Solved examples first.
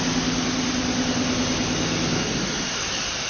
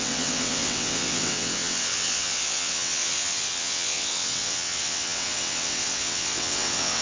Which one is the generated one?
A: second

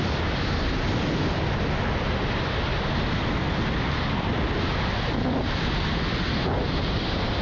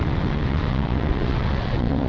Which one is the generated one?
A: second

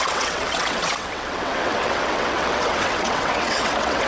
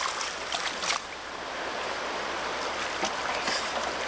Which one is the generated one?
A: first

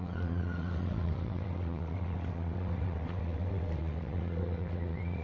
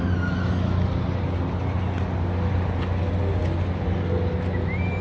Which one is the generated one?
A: first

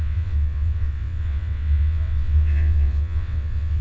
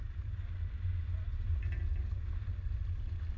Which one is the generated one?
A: first